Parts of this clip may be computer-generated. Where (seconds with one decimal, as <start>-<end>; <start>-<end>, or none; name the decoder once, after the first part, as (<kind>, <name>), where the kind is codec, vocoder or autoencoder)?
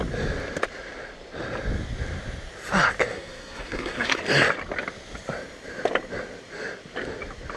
3.1-4.2 (codec, SNAC)